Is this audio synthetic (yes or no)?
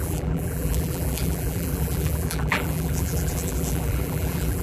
yes